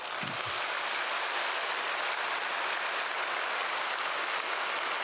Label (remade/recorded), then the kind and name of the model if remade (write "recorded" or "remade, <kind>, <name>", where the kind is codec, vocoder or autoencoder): recorded